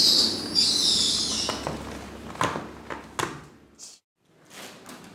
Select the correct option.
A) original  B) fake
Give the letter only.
A